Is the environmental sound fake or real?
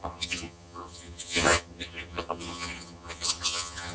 fake